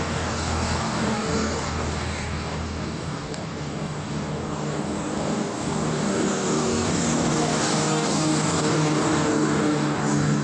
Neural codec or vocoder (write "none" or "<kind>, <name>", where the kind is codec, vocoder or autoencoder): codec, DAC